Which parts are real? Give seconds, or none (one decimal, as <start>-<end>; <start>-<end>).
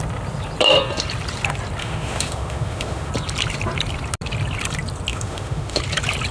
0.0-1.8; 3.1-5.1; 5.8-6.3